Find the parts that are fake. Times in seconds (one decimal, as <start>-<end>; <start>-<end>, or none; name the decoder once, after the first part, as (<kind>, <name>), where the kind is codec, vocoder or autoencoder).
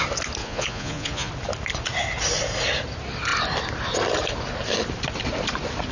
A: 0.4-1.3 (vocoder, Vocos)